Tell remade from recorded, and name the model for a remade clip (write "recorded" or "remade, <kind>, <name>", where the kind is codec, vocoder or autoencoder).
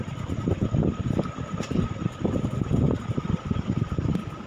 remade, vocoder, BigVGAN v2